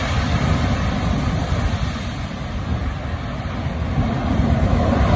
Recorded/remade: recorded